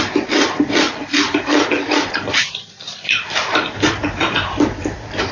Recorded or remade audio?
remade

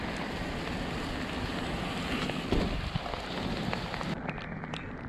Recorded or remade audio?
recorded